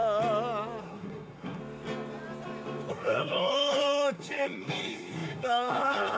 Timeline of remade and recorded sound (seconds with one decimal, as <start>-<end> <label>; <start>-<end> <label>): 0.0-0.8 recorded; 0.8-1.6 remade; 1.6-2.9 recorded; 2.9-6.2 remade